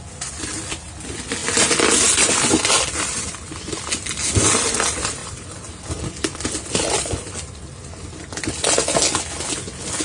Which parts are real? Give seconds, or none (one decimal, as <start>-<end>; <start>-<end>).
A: 0.0-10.0